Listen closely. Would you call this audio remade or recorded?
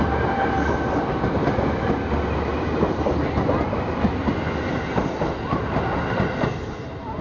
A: recorded